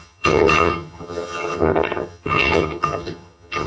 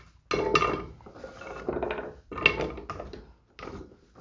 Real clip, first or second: second